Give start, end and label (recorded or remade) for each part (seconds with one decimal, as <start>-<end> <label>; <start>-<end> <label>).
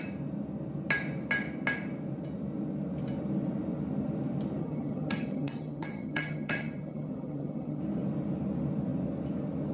0.0-4.6 recorded; 4.6-7.8 remade; 7.8-9.7 recorded